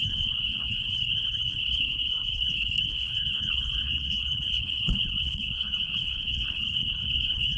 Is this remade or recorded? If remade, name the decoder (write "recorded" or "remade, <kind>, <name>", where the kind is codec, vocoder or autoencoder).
remade, codec, HILCodec